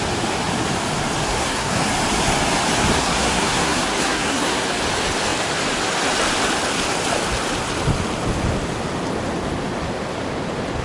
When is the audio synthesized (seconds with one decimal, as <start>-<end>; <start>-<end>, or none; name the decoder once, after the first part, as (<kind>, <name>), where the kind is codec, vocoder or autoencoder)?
1.2-1.9 (codec, SNAC); 3.0-4.6